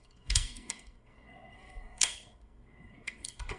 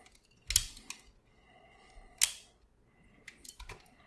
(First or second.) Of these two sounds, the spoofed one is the first